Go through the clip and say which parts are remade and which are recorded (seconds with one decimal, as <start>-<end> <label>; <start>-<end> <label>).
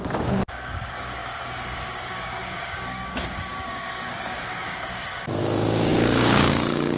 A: 0.0-7.0 remade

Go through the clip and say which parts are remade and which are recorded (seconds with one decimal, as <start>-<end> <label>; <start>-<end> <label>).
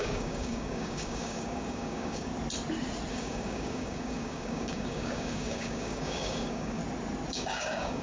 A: 0.0-2.3 remade; 2.3-3.1 recorded; 3.1-6.8 remade; 6.8-7.3 recorded; 7.3-8.0 remade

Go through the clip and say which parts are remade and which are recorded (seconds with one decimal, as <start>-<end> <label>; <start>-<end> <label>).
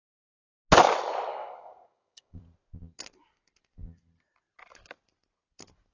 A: 0.0-1.3 recorded; 1.3-2.4 remade; 2.4-5.9 recorded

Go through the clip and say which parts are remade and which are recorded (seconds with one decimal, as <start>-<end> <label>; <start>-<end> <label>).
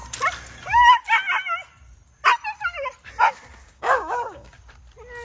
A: 0.0-3.6 recorded; 3.6-4.6 remade; 4.6-5.2 recorded